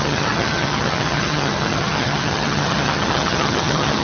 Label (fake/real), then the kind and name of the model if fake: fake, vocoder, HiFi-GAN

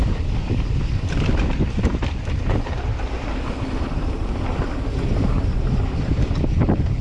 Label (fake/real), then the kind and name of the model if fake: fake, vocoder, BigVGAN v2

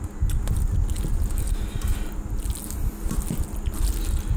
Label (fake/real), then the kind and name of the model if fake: real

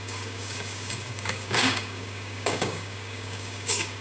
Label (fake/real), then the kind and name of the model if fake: fake, codec, DAC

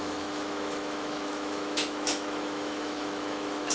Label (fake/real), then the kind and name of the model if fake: fake, autoencoder, DAC-VAE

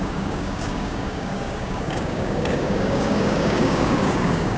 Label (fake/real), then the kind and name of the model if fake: fake, codec, DAC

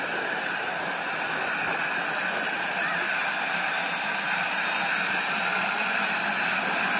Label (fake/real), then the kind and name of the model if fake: fake, vocoder, BigVGAN v2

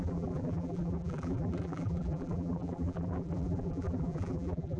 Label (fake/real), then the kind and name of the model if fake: fake, vocoder, BigVGAN v2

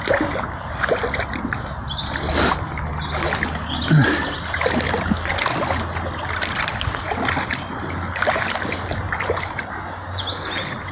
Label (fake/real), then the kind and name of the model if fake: real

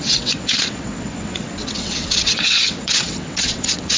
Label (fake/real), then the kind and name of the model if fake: fake, vocoder, WaveNeXt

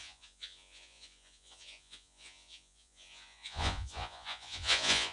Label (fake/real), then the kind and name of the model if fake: fake, vocoder, Vocos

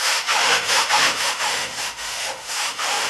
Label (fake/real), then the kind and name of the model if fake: fake, autoencoder, DAC-VAE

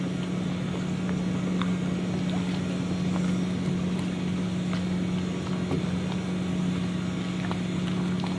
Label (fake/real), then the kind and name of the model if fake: real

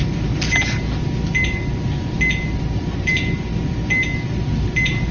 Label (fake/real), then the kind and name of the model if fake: real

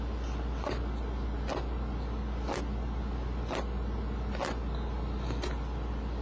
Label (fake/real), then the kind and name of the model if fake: real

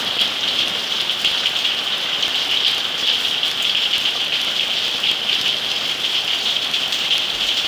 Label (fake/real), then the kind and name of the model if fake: real